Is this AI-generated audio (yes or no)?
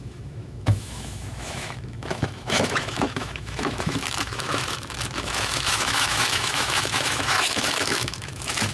yes